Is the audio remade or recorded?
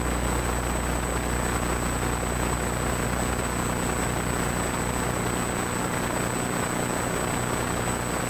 recorded